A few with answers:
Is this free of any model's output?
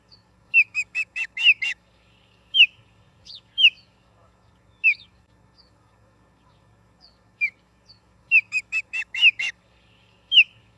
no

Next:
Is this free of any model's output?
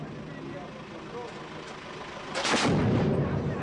yes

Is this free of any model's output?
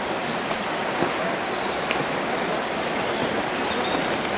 yes